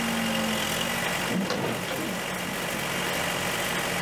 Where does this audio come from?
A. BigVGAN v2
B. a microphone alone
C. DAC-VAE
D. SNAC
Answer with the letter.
B